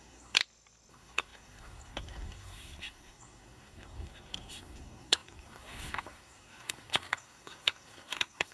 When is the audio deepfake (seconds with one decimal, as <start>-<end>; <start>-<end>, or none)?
0.0-0.4; 0.9-8.5